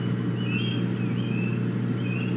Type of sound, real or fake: real